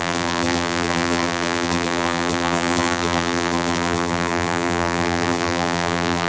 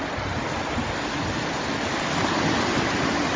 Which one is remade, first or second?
first